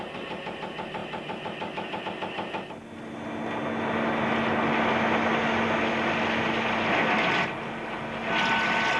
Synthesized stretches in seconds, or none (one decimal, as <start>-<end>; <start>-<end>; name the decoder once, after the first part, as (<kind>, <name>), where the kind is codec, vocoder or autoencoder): none